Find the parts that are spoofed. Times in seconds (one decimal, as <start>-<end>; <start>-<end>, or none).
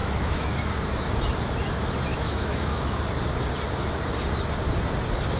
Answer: 0.0-0.7; 2.1-3.0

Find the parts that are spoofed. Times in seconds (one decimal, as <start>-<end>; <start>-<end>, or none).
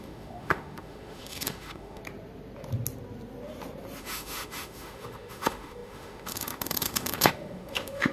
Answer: 0.0-2.0; 4.0-8.1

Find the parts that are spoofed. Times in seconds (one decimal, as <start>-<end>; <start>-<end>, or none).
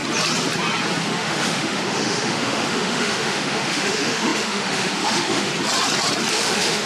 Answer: 1.0-5.5; 6.3-6.8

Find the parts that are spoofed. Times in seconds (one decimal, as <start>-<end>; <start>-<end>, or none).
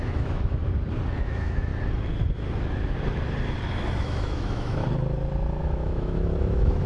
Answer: 0.0-0.6; 1.2-1.7; 4.0-4.8; 5.6-6.9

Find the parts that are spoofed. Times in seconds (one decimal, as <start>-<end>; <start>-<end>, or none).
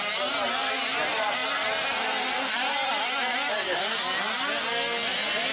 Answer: none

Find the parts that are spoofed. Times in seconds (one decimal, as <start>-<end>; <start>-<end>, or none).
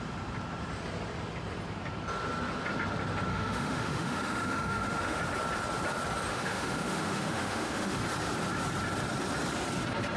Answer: 3.3-5.2; 6.3-8.0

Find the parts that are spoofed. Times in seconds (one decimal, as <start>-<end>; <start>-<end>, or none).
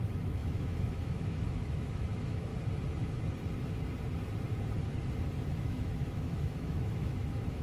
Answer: 0.0-2.5; 5.5-7.6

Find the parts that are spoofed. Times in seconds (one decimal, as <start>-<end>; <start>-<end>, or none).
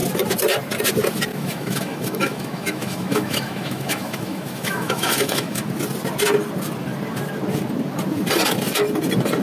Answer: 1.3-5.7